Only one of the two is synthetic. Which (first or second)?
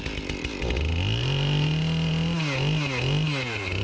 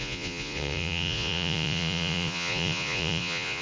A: second